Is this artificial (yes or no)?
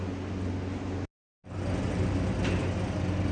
no